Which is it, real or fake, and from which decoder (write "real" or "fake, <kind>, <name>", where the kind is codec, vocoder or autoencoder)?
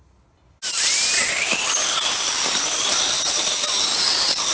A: real